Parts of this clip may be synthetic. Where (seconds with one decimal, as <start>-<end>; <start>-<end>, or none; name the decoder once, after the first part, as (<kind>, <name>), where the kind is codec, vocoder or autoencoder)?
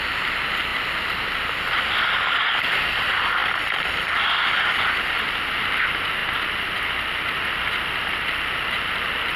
none